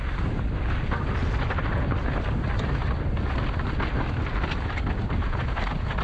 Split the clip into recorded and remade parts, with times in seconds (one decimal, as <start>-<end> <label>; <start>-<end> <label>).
0.0-6.0 recorded